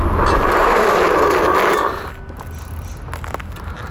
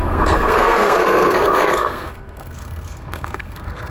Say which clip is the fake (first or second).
second